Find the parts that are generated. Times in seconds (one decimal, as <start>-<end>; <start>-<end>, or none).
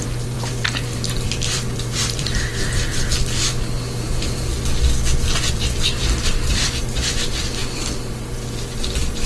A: 0.0-4.5; 5.5-7.6; 8.8-9.3